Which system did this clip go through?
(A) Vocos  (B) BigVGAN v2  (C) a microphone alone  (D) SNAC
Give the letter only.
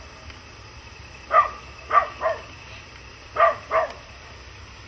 C